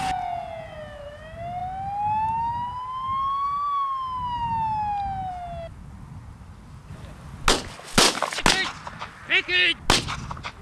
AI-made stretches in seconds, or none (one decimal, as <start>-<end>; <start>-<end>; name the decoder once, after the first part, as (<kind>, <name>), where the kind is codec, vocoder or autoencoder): none